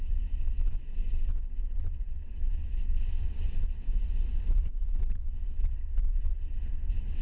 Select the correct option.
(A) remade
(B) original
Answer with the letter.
A